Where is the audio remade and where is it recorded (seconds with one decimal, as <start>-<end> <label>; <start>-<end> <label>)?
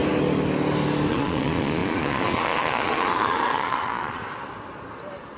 0.0-1.1 recorded; 1.1-4.2 remade; 4.2-5.4 recorded